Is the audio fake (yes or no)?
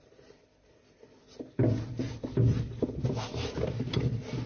no